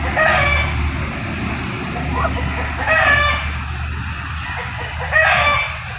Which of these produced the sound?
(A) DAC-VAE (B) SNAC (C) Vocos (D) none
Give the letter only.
D